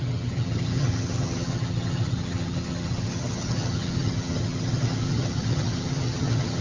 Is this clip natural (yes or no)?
no